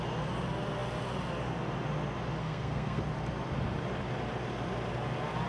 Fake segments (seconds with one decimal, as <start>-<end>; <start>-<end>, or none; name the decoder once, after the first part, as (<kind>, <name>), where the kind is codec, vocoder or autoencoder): 2.4-3.0 (codec, SNAC)